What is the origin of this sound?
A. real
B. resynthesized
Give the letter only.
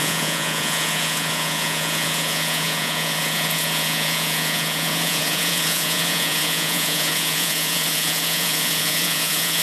B